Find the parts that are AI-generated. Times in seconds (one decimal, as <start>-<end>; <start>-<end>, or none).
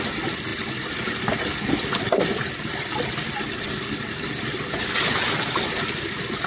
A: none